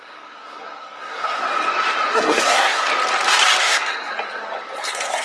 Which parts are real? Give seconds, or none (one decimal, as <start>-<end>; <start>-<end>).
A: 1.4-2.1; 2.9-3.6; 4.1-4.8